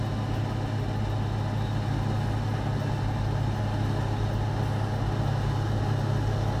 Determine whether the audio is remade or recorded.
recorded